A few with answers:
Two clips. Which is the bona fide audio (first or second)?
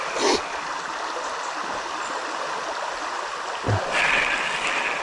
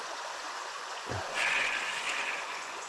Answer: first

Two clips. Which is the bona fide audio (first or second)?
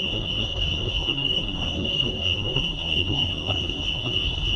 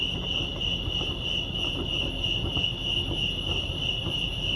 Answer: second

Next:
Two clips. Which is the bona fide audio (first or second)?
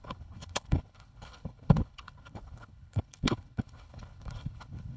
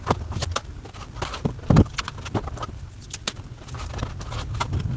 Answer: second